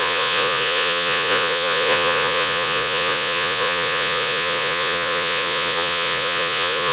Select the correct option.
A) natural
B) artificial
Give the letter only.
B